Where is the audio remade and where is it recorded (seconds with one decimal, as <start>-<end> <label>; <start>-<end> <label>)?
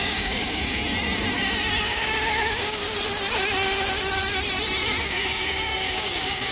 0.0-0.8 remade; 0.8-1.8 recorded; 1.8-2.8 remade; 2.8-5.0 recorded; 5.0-6.5 remade